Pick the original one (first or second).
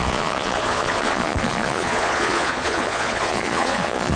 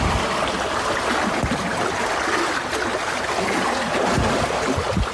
second